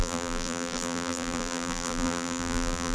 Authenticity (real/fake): fake